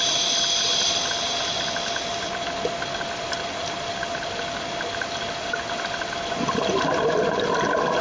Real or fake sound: real